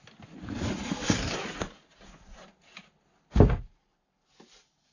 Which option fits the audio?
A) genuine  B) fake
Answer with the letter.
A